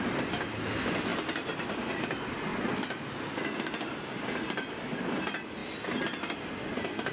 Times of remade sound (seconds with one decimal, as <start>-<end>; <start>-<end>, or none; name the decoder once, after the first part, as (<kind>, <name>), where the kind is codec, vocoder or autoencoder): none